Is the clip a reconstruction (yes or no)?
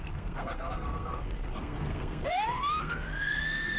yes